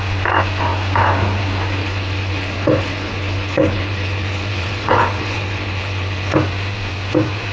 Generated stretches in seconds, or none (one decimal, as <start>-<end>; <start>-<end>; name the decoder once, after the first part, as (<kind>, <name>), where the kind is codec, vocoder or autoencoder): 1.8-6.3 (codec, HILCodec)